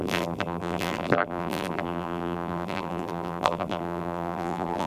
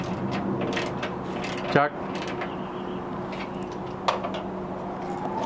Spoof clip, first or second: first